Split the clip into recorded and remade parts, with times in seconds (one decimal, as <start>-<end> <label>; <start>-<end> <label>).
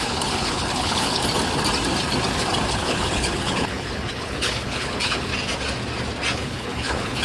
0.0-1.2 remade; 1.2-2.7 recorded; 2.7-5.3 remade; 5.3-6.3 recorded; 6.3-7.2 remade